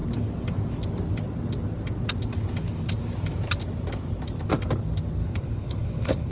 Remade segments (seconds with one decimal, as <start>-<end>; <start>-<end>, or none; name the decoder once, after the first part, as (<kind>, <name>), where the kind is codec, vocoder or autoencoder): 5.2-6.3 (codec, HILCodec)